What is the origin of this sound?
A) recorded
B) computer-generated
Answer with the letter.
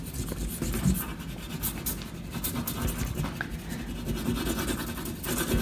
A